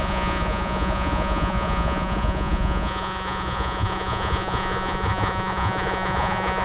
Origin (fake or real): fake